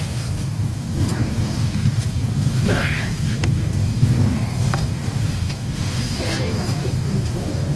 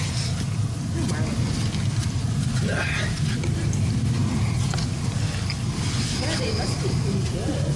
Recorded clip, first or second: second